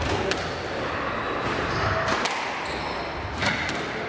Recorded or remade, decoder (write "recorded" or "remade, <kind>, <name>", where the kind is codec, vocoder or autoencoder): recorded